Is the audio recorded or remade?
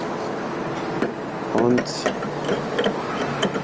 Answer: recorded